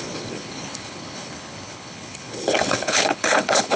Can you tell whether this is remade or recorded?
remade